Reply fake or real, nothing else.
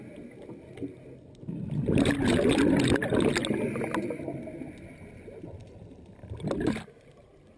real